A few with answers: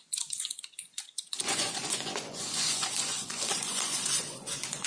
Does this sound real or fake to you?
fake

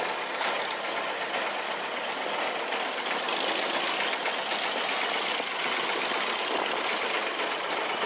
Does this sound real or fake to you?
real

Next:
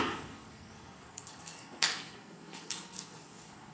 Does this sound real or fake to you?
fake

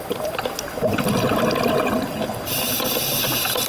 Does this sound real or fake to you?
real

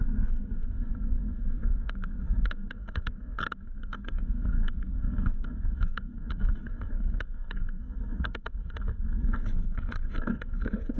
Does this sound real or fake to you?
fake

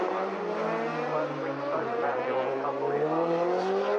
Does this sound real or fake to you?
real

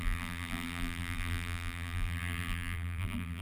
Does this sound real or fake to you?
fake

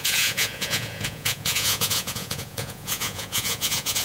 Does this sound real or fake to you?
fake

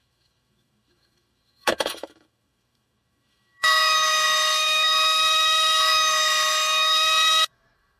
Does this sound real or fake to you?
fake